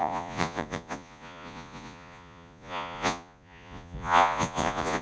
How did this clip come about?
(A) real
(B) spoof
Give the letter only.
B